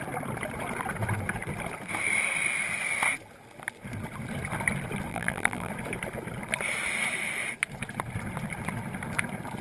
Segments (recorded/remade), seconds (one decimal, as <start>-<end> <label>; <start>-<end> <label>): 0.0-5.1 recorded; 5.1-5.7 remade; 5.7-9.6 recorded